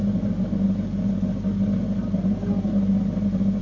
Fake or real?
real